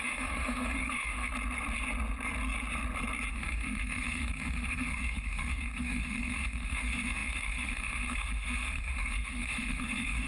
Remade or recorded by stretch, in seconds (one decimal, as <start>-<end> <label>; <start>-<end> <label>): 0.0-1.3 remade; 1.3-3.3 recorded; 3.3-10.3 remade